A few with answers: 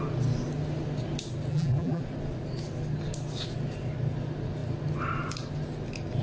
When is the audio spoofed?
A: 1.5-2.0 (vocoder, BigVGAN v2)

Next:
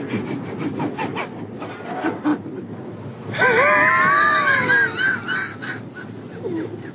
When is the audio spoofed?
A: 5.5-6.9 (vocoder, BigVGAN v2)

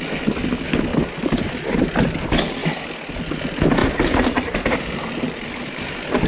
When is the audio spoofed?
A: 0.9-1.5 (vocoder, BigVGAN v2); 3.8-6.3

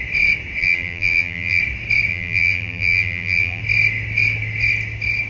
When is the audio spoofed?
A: 0.6-1.6 (vocoder, BigVGAN v2); 2.1-3.6

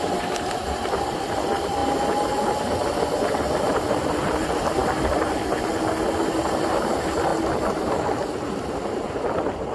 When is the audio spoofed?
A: 0.0-1.8 (vocoder, BigVGAN v2); 3.6-4.8; 6.1-7.3; 7.9-9.7

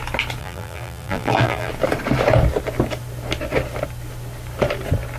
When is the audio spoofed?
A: 0.4-1.7 (vocoder, BigVGAN v2)